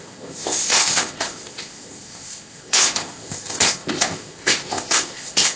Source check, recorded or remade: remade